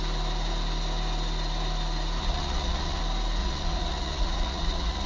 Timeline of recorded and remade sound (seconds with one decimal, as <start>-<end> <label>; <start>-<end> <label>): 0.0-2.2 recorded; 2.2-3.0 remade; 3.0-3.4 recorded; 3.4-5.1 remade